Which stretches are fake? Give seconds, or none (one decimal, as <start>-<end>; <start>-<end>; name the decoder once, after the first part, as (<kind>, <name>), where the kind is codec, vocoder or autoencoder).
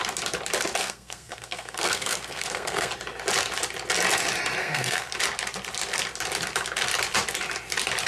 0.8-2.9 (codec, SNAC); 4.6-5.1